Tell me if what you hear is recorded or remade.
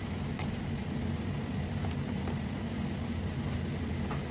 recorded